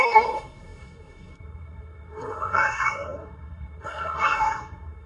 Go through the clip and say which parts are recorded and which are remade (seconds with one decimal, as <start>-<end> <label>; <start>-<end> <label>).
0.0-5.1 remade